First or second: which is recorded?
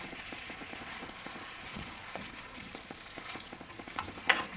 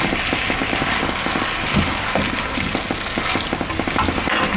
second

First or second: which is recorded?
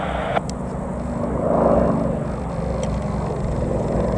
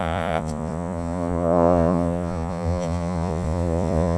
first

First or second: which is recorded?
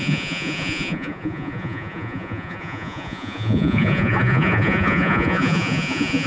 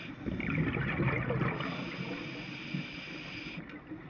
second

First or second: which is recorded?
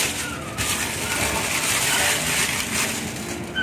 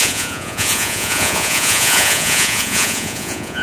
first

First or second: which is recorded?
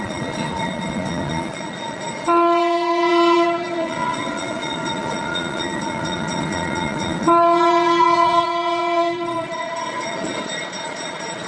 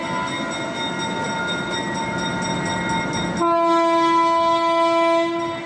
second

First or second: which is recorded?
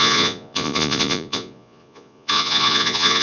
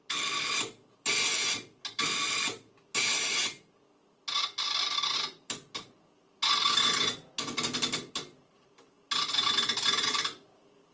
second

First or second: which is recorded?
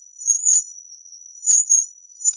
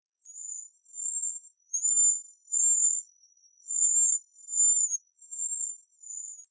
second